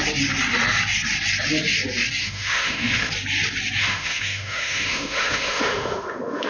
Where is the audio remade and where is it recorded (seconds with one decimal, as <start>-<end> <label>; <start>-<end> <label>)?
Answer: 0.0-2.2 recorded; 2.2-3.1 remade; 3.1-3.8 recorded; 3.8-6.5 remade